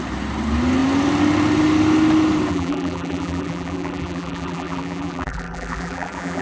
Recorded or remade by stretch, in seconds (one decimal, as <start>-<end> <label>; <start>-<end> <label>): 0.0-2.5 recorded; 2.5-6.4 remade